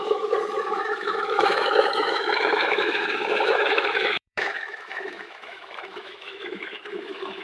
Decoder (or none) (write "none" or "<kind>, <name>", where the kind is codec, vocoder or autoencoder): autoencoder, DAC-VAE